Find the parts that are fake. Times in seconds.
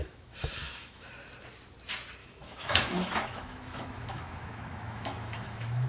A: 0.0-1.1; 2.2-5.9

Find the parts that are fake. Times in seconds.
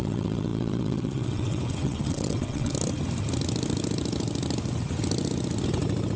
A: 0.0-2.7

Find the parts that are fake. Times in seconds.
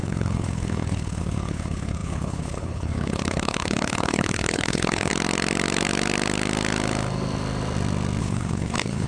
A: 0.0-5.1; 8.2-9.1